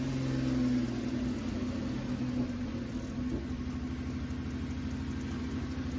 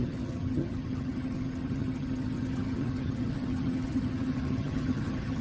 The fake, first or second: second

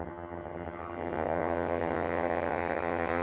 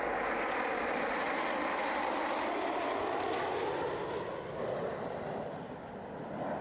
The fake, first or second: first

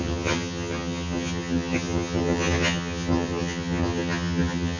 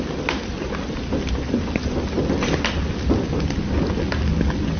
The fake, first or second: first